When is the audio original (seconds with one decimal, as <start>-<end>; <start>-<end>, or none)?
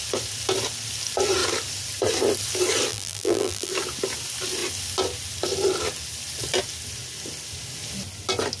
0.0-2.9; 3.7-8.6